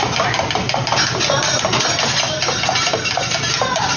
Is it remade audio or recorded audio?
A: recorded